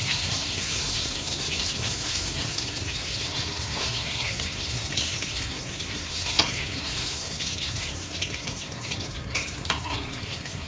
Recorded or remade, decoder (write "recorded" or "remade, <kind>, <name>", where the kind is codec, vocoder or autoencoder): remade, codec, SNAC